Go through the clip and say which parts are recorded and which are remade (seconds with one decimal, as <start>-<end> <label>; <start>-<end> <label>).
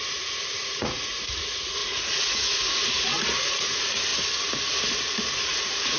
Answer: 0.0-4.1 remade; 4.1-5.3 recorded; 5.3-6.0 remade